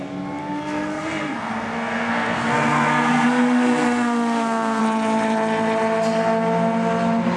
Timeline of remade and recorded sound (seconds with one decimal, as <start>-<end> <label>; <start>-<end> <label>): 0.0-0.4 recorded; 0.4-4.8 remade; 4.8-7.4 recorded